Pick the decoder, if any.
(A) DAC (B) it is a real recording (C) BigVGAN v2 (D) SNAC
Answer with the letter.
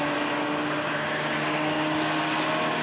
B